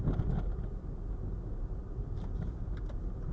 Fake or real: real